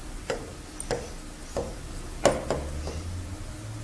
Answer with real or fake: real